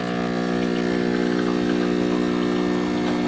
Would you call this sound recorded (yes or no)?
yes